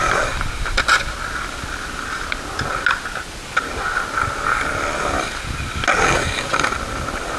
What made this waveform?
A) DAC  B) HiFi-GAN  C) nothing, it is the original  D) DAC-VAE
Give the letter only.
C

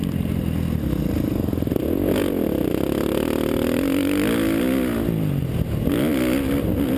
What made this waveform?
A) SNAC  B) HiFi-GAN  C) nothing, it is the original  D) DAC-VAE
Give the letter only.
C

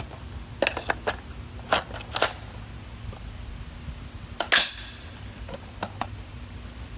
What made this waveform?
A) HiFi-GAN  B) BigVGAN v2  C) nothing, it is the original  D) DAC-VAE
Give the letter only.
C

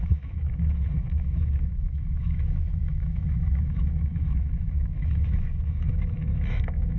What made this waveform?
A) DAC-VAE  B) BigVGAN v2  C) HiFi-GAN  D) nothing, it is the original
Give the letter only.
A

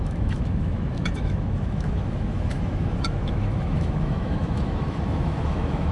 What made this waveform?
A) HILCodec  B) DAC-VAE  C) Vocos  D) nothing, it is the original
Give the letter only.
B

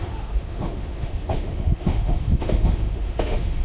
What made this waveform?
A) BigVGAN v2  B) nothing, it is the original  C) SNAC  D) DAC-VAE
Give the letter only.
D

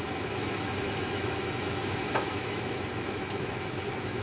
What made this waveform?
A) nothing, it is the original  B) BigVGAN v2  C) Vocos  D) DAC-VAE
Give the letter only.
D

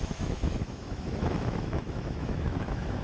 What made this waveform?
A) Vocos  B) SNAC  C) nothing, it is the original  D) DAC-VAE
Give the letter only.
D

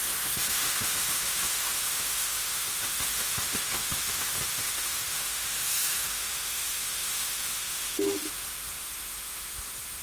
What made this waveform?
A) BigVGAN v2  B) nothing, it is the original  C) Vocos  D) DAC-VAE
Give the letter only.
D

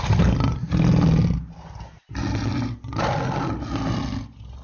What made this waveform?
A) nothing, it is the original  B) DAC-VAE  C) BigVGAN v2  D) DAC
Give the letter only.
A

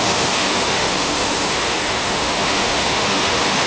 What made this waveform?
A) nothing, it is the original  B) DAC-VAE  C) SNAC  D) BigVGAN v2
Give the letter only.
B